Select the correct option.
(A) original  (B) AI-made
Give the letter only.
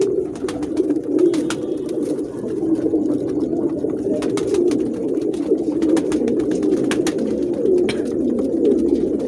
A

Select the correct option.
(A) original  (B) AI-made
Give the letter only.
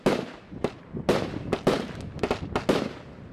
A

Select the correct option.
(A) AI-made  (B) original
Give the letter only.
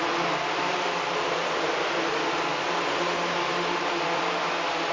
B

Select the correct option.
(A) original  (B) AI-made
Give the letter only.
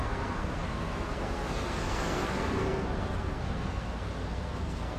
B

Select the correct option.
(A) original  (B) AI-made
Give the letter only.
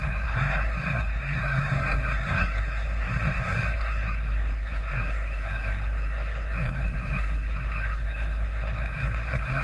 B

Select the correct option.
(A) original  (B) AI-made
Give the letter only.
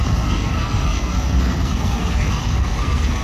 B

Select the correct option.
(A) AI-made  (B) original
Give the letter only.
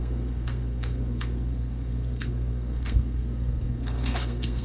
A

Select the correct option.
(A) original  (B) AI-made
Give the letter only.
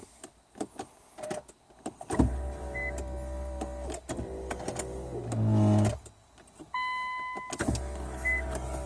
A